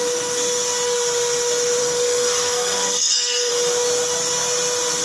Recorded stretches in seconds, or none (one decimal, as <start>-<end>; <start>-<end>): 0.0-1.8; 3.5-5.0